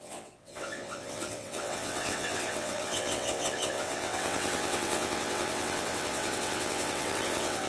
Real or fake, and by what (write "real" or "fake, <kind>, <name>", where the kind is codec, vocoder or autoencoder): fake, vocoder, WaveNeXt